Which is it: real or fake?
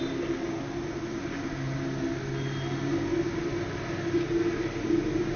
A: real